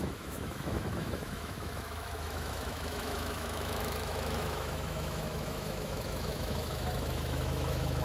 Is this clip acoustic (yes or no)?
no